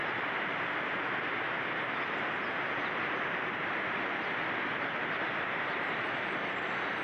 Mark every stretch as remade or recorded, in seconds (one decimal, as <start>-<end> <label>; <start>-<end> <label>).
0.0-7.0 recorded